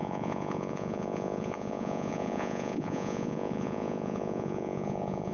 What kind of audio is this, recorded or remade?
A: remade